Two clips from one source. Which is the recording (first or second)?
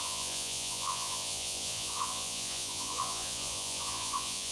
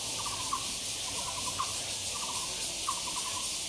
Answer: second